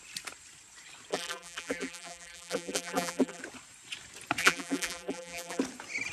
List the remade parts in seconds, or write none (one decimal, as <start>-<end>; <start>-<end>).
1.1-3.4; 4.4-5.6